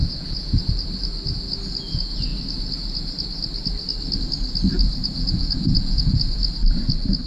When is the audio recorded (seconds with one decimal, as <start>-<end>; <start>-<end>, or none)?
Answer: 0.6-5.0; 6.2-7.3